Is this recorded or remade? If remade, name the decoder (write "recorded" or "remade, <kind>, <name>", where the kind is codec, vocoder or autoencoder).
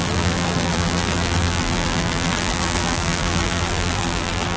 remade, vocoder, BigVGAN v2